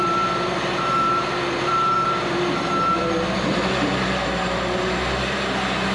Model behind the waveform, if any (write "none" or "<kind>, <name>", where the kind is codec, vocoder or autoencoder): vocoder, BigVGAN v2